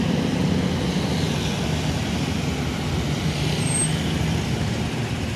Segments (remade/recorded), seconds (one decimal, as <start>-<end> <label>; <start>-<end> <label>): 0.0-5.4 recorded